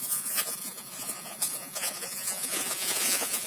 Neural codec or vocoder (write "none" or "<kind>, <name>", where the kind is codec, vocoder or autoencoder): vocoder, Vocos